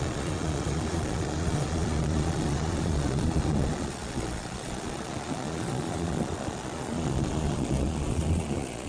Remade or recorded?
remade